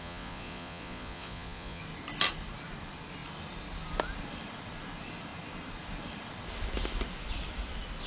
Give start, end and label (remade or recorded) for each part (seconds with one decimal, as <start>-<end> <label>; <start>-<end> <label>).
0.0-1.8 remade; 1.8-8.1 recorded